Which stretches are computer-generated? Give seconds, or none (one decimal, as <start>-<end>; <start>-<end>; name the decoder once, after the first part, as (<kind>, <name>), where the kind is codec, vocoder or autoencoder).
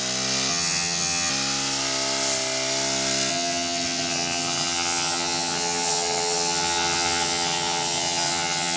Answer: 0.5-1.3 (vocoder, HiFi-GAN); 3.3-8.8